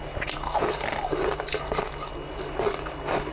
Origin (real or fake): real